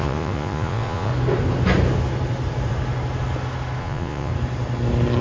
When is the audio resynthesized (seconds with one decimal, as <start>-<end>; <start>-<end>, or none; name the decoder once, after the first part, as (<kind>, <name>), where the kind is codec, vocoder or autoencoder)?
0.0-1.1 (vocoder, Vocos); 3.8-4.3